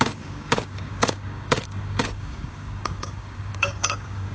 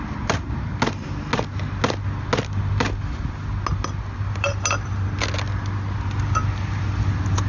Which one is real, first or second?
second